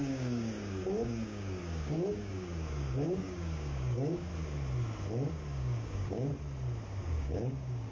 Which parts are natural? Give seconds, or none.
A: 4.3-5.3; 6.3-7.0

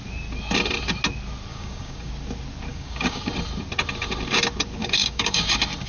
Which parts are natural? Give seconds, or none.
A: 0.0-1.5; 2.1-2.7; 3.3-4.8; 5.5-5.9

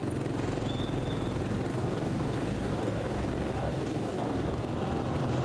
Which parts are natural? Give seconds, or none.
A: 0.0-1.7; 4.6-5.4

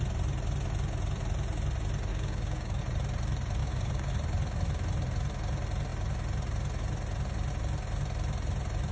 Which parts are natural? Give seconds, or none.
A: 0.0-2.1; 2.8-3.6; 4.1-8.9

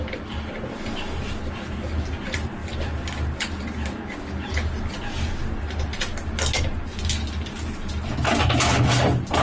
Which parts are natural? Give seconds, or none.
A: 0.0-9.4